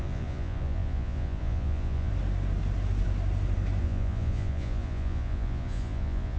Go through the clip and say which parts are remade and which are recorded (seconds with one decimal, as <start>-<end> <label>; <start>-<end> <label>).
0.0-2.1 remade; 2.1-3.8 recorded; 3.8-6.4 remade